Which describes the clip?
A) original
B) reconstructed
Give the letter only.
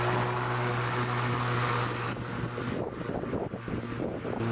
A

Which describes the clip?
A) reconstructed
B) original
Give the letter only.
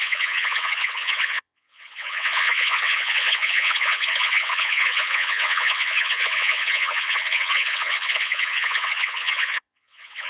A